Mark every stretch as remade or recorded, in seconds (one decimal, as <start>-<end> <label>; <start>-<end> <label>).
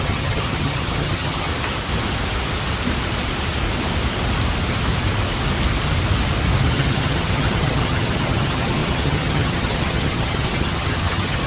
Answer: 0.0-1.5 remade; 1.5-6.7 recorded; 6.7-11.5 remade